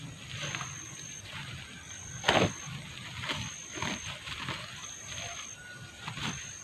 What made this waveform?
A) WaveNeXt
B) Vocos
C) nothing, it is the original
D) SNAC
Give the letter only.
C